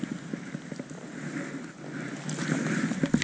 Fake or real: real